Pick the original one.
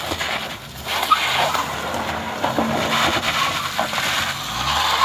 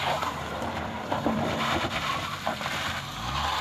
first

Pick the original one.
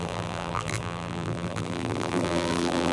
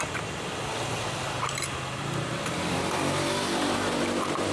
second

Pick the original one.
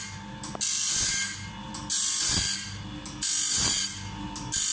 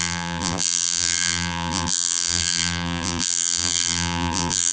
first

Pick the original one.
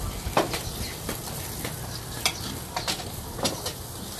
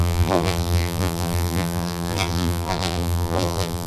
first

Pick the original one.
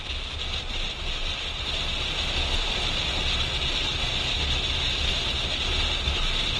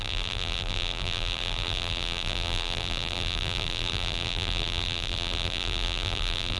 first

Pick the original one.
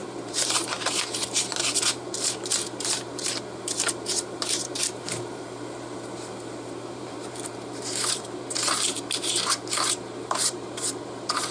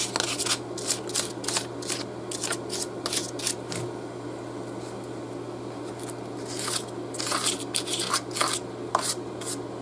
second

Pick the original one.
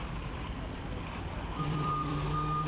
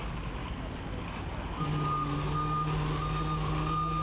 second